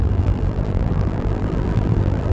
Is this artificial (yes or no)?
yes